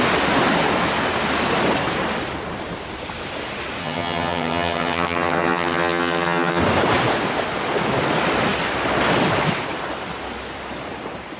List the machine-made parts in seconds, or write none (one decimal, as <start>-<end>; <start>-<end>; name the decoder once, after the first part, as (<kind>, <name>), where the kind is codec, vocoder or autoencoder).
3.8-6.6 (vocoder, HiFi-GAN)